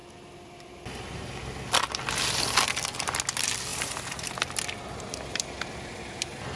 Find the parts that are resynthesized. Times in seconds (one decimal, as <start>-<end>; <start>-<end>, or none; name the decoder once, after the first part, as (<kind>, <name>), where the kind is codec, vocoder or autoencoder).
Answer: none